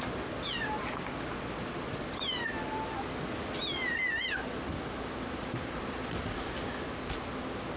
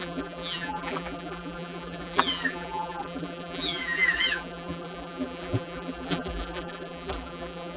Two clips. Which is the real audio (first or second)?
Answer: first